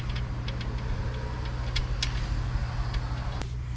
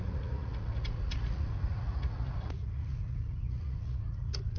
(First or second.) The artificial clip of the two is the second